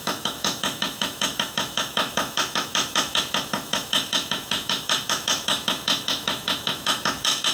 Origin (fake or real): fake